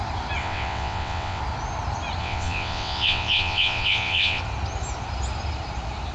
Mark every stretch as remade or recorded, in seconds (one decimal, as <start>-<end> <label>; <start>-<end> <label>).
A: 0.0-0.4 recorded; 0.4-1.4 remade; 1.4-2.2 recorded; 2.2-4.4 remade; 4.4-6.1 recorded